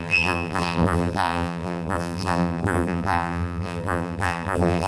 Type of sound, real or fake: fake